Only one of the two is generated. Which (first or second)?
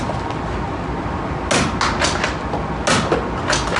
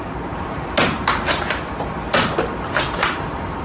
second